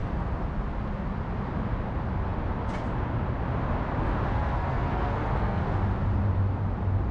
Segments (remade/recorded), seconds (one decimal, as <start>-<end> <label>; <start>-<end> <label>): 0.0-4.3 recorded; 4.3-5.6 remade; 5.6-7.1 recorded